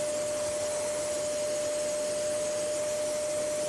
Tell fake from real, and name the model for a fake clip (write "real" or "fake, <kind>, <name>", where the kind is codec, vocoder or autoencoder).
real